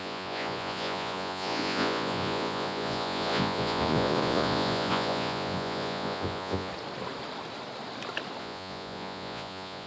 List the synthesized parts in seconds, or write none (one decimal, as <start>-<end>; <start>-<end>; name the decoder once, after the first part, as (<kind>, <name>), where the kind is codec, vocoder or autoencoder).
0.0-6.7 (vocoder, Vocos); 8.4-9.9